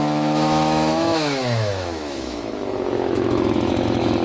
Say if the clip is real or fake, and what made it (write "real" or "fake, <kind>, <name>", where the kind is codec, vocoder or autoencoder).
fake, autoencoder, DAC-VAE